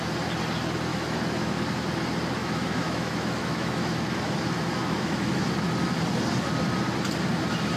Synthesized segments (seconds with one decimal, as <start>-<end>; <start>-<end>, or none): 0.9-1.6; 2.4-5.4